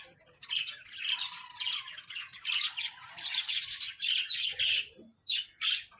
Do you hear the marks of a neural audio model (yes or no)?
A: no